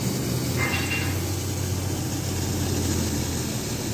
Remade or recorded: recorded